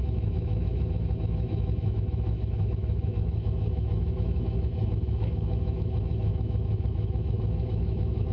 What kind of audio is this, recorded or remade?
remade